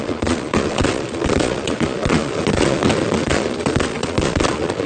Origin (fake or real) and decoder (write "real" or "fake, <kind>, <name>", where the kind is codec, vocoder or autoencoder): fake, vocoder, Vocos